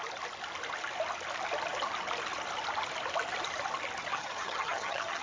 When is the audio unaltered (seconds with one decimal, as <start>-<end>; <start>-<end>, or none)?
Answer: 0.0-4.1